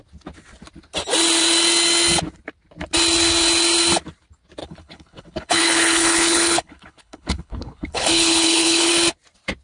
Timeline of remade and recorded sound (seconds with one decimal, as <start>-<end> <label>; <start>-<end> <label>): 0.0-4.6 recorded; 4.6-8.9 remade; 8.9-9.6 recorded